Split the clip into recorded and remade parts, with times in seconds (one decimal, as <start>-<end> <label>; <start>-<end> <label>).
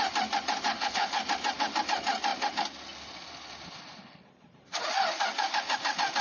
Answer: 0.0-0.7 recorded; 0.7-1.2 remade; 1.2-6.2 recorded